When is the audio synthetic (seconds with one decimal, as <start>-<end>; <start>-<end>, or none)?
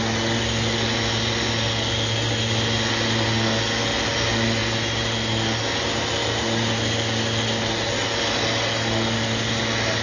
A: none